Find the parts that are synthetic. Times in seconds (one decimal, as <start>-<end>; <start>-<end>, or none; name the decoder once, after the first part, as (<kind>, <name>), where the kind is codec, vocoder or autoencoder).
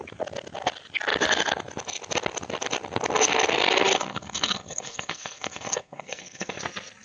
3.9-6.6 (codec, SNAC)